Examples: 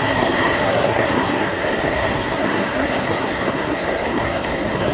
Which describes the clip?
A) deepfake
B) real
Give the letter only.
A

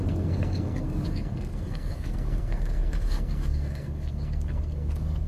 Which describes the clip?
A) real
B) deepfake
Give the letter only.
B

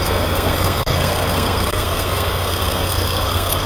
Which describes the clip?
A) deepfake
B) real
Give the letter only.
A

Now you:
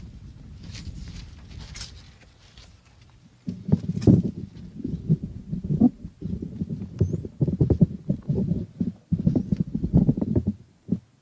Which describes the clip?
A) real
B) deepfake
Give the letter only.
A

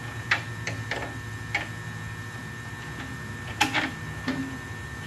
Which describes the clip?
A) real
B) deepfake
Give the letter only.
A